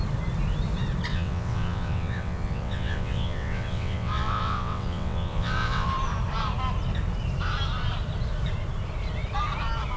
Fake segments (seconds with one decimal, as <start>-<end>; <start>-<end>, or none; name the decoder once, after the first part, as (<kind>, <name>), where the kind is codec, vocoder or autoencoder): 1.1-5.9 (vocoder, WaveNeXt)